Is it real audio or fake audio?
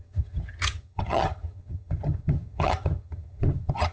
fake